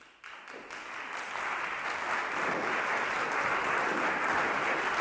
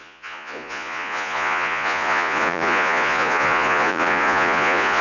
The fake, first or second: second